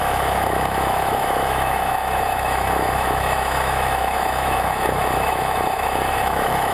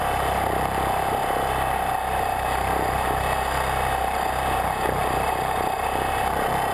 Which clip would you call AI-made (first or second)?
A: first